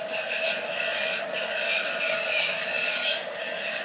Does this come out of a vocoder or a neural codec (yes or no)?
yes